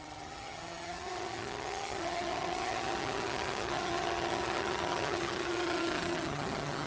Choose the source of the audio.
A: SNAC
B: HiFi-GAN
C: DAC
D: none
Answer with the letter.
B